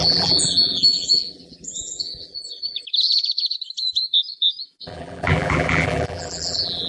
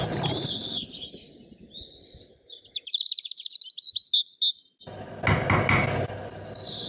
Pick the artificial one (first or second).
first